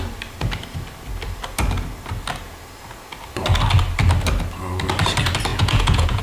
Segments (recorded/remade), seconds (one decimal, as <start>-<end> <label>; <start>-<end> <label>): 0.0-5.5 recorded; 5.5-6.2 remade